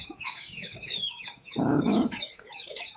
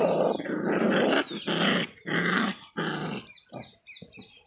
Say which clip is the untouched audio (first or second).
second